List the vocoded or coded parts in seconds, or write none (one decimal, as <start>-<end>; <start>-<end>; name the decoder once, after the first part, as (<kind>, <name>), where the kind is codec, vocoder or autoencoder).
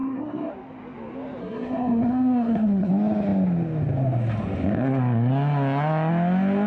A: 0.0-0.5 (codec, SNAC); 1.4-2.9